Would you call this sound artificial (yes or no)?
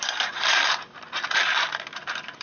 yes